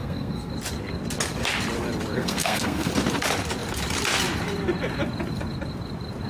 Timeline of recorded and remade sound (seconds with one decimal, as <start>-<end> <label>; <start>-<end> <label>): 0.0-0.5 remade; 0.5-2.2 recorded; 2.2-2.9 remade; 2.9-6.3 recorded